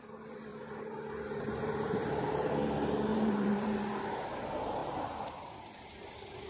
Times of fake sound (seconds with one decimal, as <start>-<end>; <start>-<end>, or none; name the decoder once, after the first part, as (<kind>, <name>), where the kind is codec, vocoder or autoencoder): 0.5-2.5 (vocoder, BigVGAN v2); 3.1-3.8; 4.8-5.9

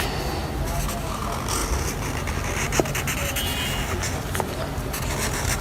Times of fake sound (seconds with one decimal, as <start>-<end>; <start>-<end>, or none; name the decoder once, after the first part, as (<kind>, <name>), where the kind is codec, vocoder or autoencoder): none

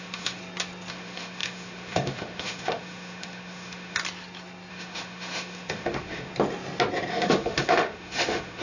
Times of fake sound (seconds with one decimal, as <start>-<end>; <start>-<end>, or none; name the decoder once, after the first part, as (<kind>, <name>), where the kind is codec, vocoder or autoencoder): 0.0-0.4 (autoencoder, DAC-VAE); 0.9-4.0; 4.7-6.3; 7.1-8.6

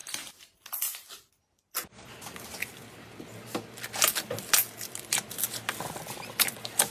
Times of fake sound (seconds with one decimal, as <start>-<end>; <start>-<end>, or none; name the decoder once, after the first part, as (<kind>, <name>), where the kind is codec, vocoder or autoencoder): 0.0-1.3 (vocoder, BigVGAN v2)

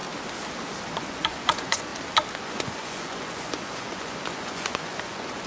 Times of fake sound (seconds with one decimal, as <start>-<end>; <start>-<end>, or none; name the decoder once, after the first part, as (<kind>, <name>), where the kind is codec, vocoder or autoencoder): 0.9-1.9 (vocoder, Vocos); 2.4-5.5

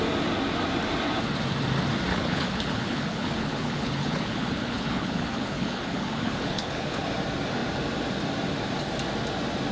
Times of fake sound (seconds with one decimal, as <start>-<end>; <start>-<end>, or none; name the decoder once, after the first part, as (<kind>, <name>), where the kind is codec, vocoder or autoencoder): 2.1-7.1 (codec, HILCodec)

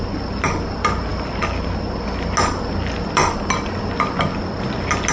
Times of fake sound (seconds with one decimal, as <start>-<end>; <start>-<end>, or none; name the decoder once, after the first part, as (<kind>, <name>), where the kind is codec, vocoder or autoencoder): none